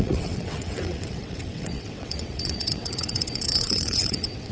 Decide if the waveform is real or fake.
fake